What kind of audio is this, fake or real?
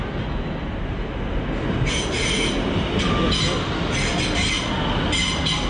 real